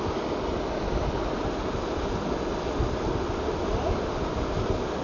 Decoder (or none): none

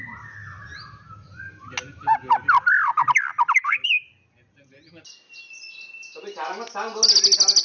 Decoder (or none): none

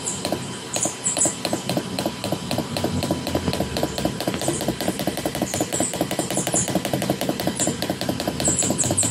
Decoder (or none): vocoder, BigVGAN v2